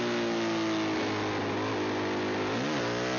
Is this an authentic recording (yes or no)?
yes